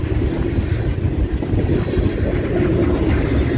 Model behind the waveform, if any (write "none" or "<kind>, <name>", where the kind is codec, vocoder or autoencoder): none